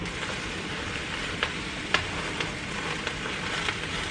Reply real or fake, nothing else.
real